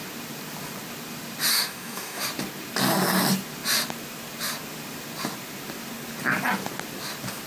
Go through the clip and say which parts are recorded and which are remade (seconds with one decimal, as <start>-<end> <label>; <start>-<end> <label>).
0.0-1.5 recorded; 1.5-2.2 remade; 2.2-7.5 recorded